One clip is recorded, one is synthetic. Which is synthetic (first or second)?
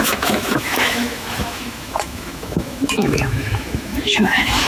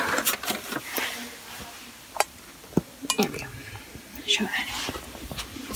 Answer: first